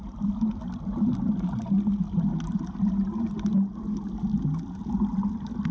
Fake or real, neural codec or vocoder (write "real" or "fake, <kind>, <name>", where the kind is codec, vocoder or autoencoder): real